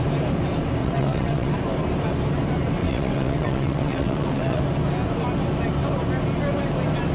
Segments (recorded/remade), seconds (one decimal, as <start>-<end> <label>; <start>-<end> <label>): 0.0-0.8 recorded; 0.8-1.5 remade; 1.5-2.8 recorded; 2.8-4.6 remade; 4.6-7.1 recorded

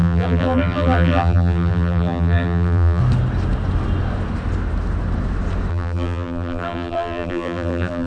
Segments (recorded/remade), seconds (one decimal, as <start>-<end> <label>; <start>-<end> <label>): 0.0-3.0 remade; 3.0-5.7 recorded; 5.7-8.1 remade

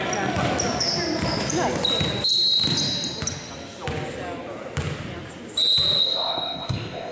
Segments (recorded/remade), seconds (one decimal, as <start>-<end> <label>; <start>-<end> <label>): 0.0-6.0 recorded; 6.0-7.1 remade

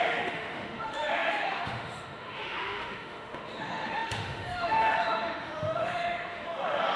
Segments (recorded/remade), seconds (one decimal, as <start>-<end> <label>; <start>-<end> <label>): 0.0-7.0 remade

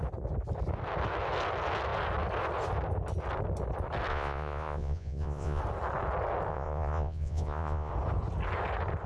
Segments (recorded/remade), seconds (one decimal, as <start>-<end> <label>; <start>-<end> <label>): 0.0-4.1 recorded; 4.1-5.6 remade; 5.6-6.5 recorded; 6.5-7.9 remade; 7.9-9.1 recorded